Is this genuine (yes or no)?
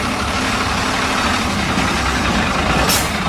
no